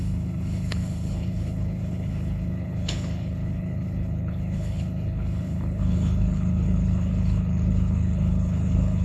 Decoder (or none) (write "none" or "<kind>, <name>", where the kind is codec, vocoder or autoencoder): codec, HILCodec